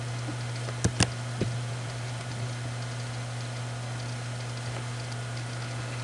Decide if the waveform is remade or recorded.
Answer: recorded